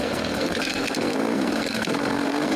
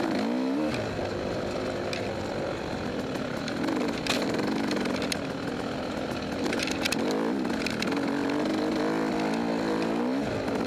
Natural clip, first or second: second